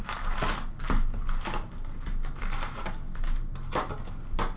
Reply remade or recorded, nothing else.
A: recorded